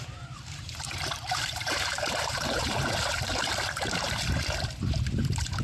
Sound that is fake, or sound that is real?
fake